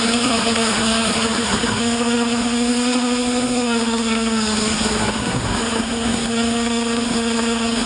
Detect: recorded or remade remade